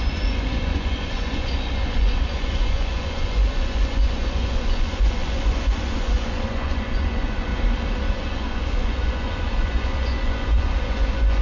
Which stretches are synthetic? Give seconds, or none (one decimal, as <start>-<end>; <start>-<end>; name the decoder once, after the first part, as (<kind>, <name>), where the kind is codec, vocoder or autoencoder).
0.0-7.5 (vocoder, Vocos); 8.1-11.4